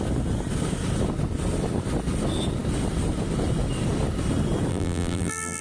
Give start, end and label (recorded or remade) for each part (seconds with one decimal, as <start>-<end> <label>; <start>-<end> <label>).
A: 0.0-4.7 recorded; 4.7-5.6 remade